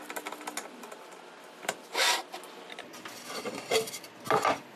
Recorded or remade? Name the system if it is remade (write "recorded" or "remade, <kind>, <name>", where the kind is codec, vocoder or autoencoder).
recorded